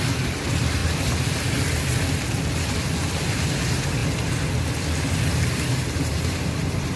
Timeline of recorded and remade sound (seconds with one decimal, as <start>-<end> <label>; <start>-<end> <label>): 0.0-0.8 remade; 0.8-3.2 recorded; 3.2-4.0 remade; 4.0-5.7 recorded; 5.7-7.0 remade